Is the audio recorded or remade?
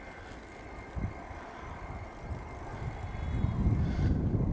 recorded